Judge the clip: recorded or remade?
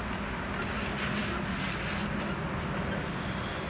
recorded